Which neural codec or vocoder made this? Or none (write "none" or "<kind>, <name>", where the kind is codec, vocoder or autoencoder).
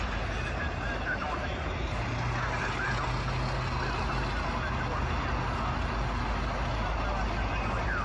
none